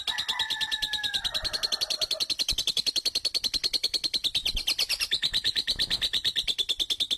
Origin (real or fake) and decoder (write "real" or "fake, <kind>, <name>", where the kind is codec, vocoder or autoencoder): fake, vocoder, BigVGAN v2